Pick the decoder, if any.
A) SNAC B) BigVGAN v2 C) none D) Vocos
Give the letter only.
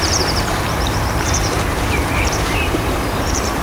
B